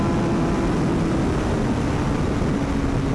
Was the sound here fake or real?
real